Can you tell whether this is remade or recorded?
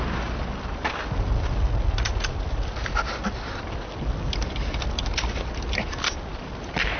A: remade